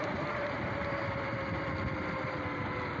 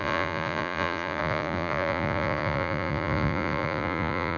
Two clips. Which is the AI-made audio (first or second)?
second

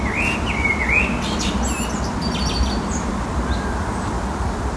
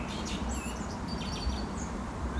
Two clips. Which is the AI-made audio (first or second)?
second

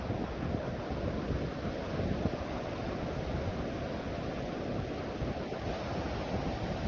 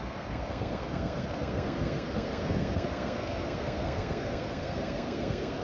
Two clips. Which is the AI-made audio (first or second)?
second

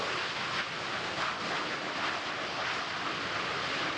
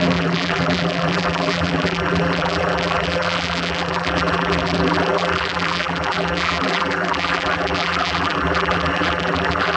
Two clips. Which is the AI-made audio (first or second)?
second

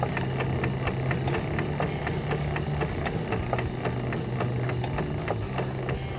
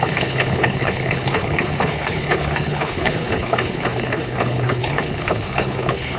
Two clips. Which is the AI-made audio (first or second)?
second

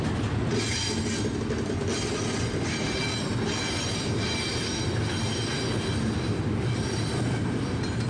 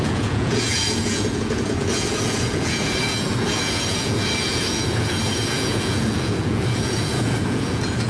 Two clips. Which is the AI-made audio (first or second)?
second